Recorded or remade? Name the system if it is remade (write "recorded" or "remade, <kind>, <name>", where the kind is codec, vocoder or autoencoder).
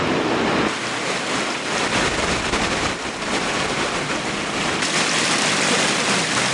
remade, vocoder, BigVGAN v2